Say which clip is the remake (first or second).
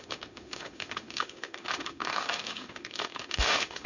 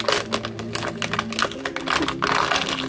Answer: first